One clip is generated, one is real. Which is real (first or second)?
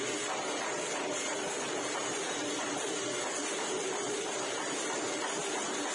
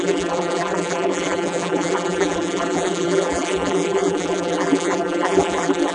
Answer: first